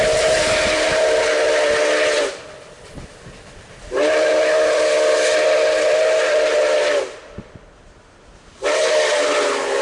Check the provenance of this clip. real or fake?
real